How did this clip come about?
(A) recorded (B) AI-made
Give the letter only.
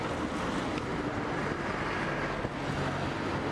A